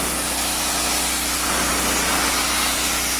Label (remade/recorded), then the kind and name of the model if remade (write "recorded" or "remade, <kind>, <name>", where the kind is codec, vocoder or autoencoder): recorded